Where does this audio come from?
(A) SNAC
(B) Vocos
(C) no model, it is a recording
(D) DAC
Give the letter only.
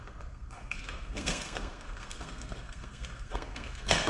A